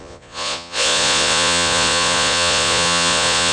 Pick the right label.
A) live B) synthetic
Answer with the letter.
B